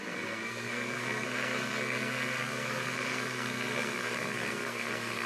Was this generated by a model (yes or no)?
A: yes